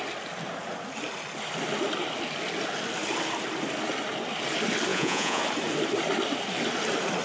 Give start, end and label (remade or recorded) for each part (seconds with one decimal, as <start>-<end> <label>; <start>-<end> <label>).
0.0-4.9 recorded; 4.9-5.4 remade; 5.4-7.2 recorded